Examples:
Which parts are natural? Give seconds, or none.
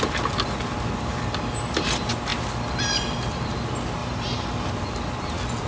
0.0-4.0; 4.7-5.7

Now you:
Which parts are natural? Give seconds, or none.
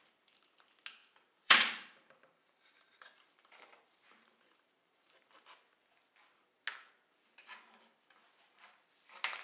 0.0-1.0; 5.1-9.4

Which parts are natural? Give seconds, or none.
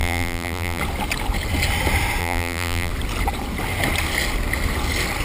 0.8-2.2; 2.9-5.2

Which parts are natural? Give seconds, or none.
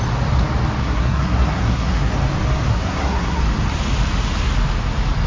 0.0-0.8; 2.1-2.7; 3.4-5.3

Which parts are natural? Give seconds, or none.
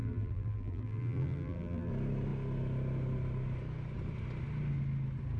1.9-5.4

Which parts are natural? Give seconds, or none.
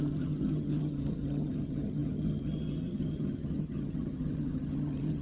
none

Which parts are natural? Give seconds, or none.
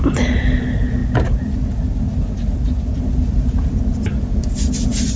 0.0-5.2